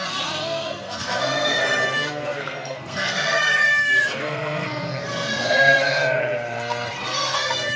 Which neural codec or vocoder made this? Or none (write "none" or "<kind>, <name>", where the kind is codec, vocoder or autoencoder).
codec, SNAC